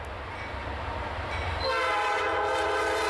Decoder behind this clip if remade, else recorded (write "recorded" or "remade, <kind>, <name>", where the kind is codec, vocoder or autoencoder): recorded